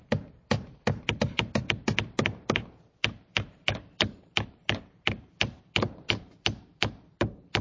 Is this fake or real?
fake